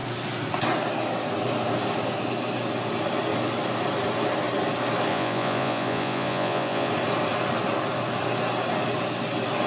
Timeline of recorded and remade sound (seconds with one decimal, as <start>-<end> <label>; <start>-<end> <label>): 0.0-5.1 recorded; 5.1-6.9 remade; 6.9-9.7 recorded